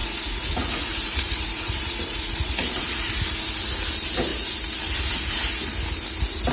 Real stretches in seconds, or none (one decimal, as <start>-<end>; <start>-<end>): 3.1-6.5